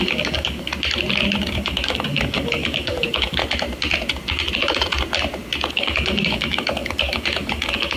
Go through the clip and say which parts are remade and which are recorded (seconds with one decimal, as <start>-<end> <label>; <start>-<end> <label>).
0.0-0.7 remade; 0.7-1.4 recorded; 1.4-3.4 remade; 3.4-5.7 recorded; 5.7-8.0 remade

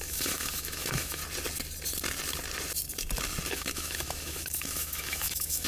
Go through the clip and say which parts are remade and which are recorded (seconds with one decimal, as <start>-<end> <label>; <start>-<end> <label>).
0.0-1.2 remade; 1.2-3.5 recorded; 3.5-5.7 remade

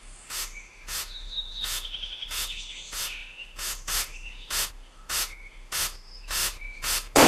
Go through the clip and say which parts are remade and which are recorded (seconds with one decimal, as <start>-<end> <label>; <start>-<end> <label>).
0.0-7.3 remade

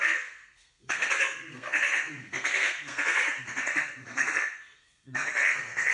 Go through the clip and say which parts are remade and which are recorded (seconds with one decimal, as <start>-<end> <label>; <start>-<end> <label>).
0.0-5.9 remade

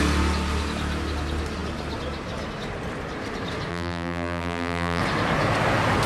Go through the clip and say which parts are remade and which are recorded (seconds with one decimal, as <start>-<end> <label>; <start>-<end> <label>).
0.0-3.7 recorded; 3.7-5.0 remade; 5.0-6.1 recorded

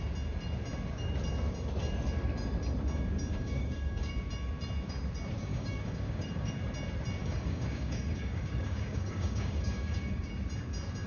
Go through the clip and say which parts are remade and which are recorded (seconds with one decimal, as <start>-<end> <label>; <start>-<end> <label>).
0.0-3.3 recorded; 3.3-4.1 remade; 4.1-5.5 recorded; 5.5-6.5 remade; 6.5-7.2 recorded; 7.2-10.3 remade; 10.3-11.1 recorded

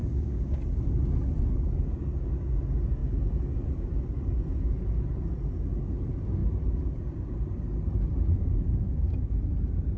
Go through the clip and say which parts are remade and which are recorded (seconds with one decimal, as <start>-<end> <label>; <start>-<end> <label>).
0.0-0.6 remade; 0.6-10.0 recorded